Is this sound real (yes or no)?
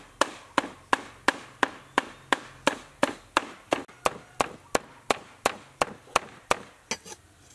yes